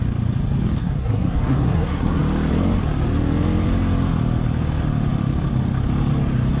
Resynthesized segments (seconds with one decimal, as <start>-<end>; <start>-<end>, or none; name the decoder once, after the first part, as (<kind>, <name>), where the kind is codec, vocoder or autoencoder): 0.8-2.2 (codec, SNAC)